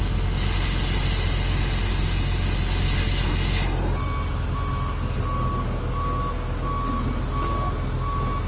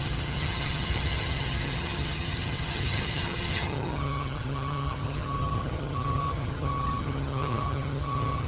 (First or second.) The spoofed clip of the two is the second